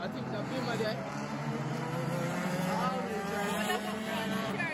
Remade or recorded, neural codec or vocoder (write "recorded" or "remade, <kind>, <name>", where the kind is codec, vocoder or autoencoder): remade, vocoder, BigVGAN v2